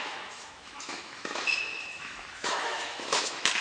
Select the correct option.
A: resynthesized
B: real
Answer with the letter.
A